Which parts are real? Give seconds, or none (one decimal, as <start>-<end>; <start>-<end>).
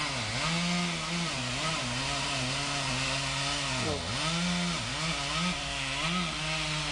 0.0-1.0; 2.9-6.9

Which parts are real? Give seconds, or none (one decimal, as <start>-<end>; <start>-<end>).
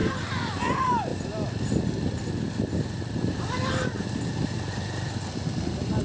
0.0-6.0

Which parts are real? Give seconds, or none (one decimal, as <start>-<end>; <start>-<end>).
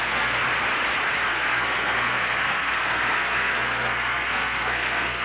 0.4-1.3